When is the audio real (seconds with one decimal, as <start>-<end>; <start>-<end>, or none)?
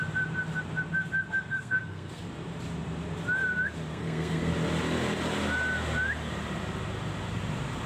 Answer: 0.0-1.5; 2.2-3.9; 4.5-7.9